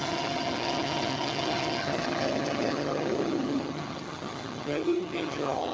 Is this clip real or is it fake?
fake